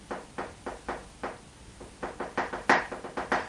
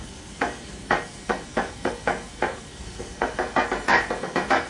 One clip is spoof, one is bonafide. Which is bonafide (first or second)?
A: first